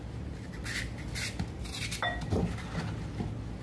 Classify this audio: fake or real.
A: real